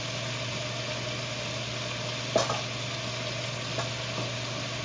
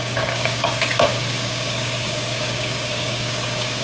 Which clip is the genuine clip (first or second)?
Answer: first